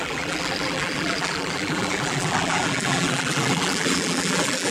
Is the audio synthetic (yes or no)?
yes